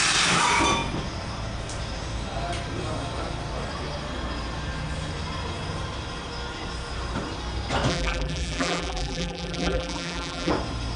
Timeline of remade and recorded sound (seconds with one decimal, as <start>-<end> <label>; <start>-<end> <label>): 0.0-7.9 recorded; 7.9-10.5 remade; 10.5-11.0 recorded